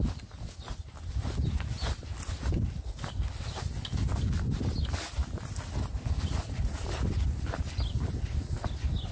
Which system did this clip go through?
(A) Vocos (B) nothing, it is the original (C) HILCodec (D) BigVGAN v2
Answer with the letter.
B